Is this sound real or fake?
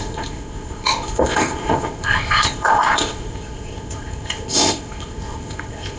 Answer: fake